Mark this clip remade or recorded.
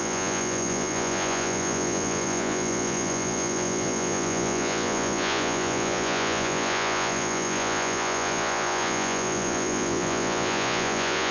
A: remade